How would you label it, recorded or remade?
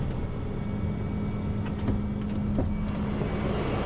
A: recorded